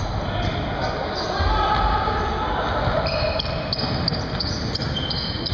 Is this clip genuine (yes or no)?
yes